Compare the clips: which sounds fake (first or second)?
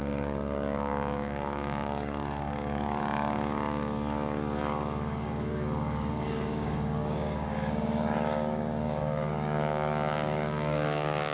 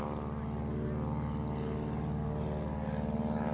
first